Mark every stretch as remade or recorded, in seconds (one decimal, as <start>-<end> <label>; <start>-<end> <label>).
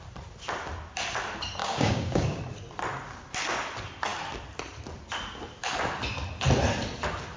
0.0-1.6 recorded; 1.6-2.4 remade; 2.4-7.4 recorded